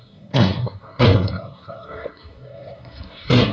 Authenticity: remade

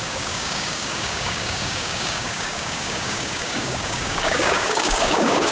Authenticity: remade